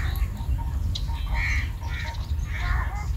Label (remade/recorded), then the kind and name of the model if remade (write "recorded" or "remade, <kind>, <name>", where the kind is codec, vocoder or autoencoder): recorded